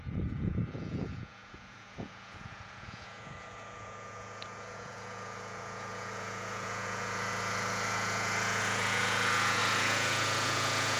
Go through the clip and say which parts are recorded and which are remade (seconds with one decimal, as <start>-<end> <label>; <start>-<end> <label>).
0.0-11.0 remade